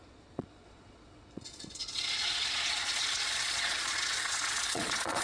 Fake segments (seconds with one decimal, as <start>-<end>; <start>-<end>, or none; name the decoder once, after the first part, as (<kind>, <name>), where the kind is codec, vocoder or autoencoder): 0.0-5.2 (vocoder, Vocos)